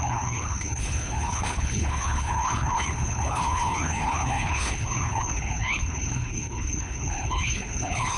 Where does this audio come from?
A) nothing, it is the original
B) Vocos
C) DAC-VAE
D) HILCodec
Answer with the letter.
D